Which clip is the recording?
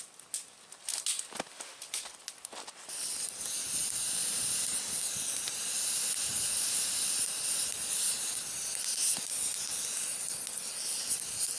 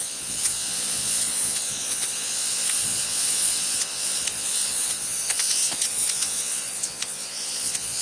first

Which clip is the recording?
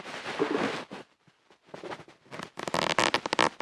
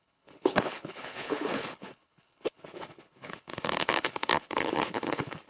first